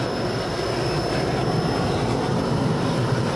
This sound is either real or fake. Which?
real